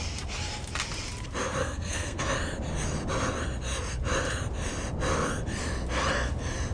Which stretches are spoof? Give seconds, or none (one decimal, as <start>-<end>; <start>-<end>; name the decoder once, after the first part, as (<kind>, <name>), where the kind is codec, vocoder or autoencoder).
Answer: 1.6-2.2 (codec, SNAC)